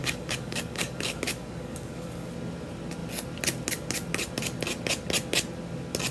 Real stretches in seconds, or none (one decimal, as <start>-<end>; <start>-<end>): 2.3-6.1